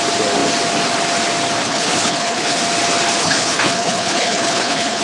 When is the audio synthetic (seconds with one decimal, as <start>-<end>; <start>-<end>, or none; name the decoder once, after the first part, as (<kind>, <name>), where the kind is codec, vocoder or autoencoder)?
1.6-2.6 (codec, HILCodec); 3.2-5.0